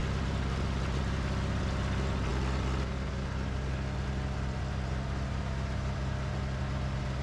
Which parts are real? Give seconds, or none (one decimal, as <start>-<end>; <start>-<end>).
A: 0.0-7.2

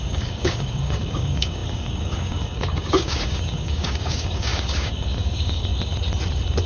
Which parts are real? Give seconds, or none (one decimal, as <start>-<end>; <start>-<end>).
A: 5.7-6.7

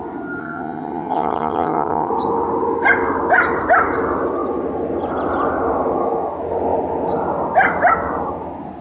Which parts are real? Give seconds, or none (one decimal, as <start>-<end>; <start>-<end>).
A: 0.0-0.4; 2.1-8.8

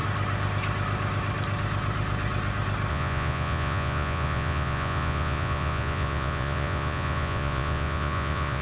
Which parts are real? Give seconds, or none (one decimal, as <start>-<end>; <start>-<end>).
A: 0.0-2.9

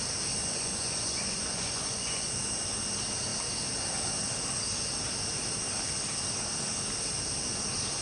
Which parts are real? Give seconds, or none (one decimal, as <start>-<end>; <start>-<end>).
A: 0.0-0.4; 2.3-8.0

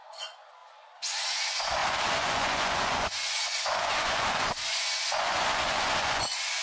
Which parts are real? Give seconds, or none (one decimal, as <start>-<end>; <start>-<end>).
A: none